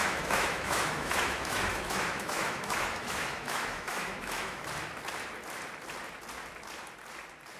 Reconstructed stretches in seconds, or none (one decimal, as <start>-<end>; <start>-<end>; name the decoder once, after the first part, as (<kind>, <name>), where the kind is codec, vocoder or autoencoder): 0.0-4.6 (autoencoder, DAC-VAE)